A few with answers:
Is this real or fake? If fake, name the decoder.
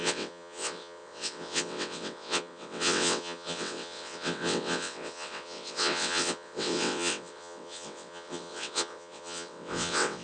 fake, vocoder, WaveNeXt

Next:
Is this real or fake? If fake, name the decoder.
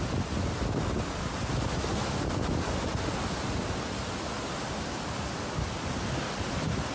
real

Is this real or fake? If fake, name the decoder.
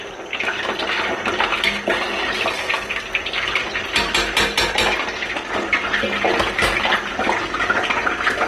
real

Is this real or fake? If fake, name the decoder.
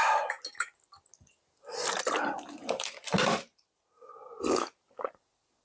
real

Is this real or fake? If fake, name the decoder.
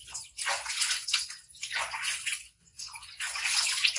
fake, vocoder, Vocos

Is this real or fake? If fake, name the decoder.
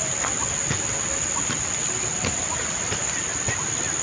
real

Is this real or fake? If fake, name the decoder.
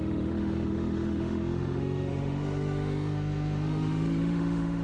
fake, autoencoder, DAC-VAE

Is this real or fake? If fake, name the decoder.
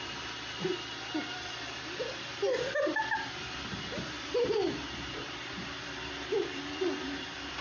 fake, vocoder, BigVGAN v2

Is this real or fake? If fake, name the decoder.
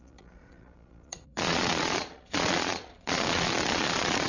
fake, vocoder, Vocos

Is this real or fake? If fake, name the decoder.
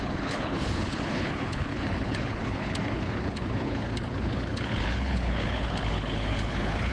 fake, codec, HILCodec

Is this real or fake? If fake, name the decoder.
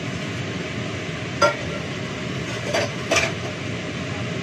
fake, vocoder, BigVGAN v2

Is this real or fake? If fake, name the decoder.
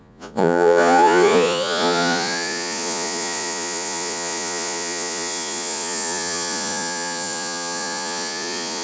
fake, vocoder, Vocos